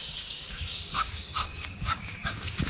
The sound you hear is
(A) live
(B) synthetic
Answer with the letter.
B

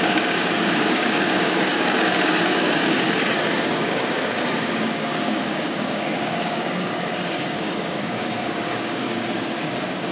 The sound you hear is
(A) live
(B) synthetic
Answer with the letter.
B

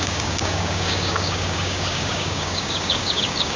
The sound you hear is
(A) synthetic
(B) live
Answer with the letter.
A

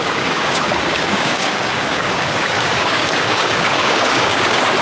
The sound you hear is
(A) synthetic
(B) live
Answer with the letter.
A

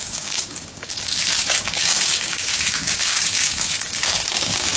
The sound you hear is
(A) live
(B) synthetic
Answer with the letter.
B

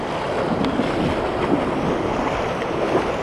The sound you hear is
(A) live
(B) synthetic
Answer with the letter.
A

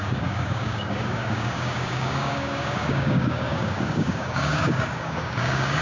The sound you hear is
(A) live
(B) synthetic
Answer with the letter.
B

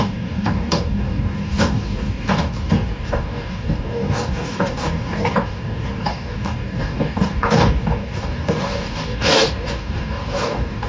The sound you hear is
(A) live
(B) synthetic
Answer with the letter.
B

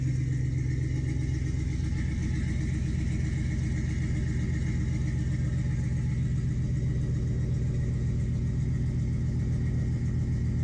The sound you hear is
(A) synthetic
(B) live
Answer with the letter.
B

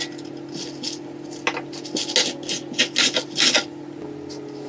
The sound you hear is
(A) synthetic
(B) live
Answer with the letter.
B